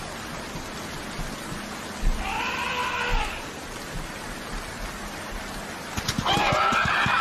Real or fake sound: real